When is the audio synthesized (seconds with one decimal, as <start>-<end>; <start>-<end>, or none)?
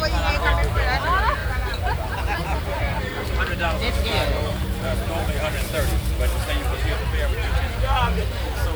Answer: 1.4-6.1